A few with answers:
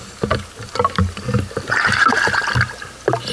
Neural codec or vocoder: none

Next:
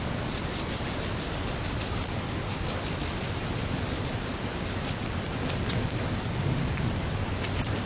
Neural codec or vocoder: none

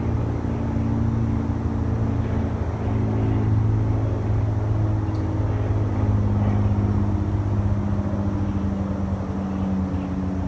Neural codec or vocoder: none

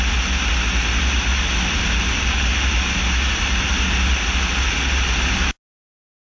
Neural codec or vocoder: none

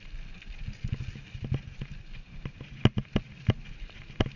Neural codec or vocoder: none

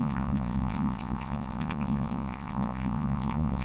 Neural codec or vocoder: vocoder, Vocos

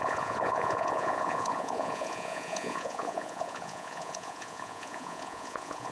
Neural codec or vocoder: vocoder, Vocos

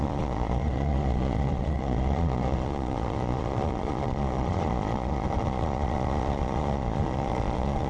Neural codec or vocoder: vocoder, Vocos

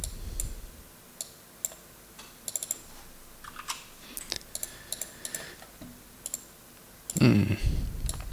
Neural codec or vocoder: none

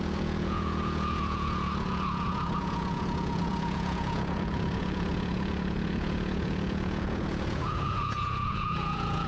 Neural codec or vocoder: vocoder, Vocos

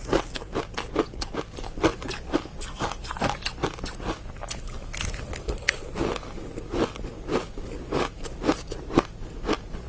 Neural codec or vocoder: none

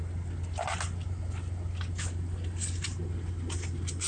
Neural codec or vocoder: none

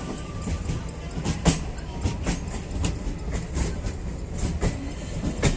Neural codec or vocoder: none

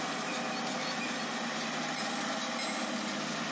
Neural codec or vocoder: none